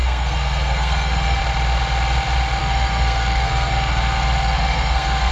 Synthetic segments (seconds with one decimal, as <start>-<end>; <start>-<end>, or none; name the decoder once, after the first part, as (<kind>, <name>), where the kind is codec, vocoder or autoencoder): 0.0-1.4 (codec, SNAC); 2.6-5.3